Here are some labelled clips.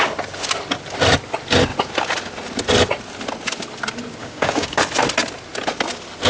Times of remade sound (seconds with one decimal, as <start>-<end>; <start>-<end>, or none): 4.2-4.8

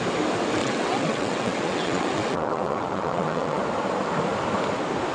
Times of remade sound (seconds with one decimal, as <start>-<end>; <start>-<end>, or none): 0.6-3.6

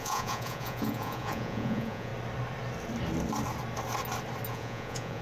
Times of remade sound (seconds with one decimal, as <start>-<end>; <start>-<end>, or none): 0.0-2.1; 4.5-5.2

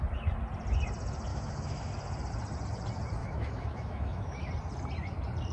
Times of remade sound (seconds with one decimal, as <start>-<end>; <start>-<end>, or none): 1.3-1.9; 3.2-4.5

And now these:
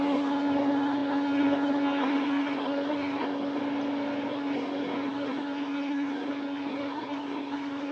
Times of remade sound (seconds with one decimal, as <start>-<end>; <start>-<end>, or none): 0.0-3.6; 4.3-7.9

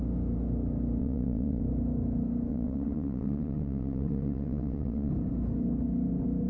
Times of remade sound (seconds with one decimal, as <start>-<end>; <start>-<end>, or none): 1.0-1.6; 2.5-5.1

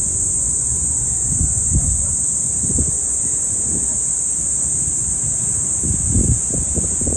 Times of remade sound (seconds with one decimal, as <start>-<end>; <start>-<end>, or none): 0.0-4.1; 6.8-7.2

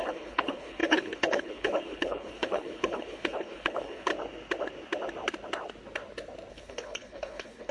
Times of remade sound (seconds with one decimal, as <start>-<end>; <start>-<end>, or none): 0.0-4.1; 6.5-7.7